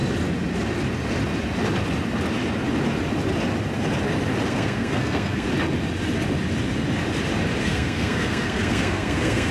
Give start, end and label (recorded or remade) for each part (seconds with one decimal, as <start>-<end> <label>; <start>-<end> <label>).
0.0-4.5 recorded; 4.5-5.5 remade; 5.5-7.6 recorded; 7.6-9.5 remade